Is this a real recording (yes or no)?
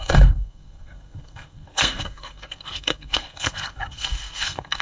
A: no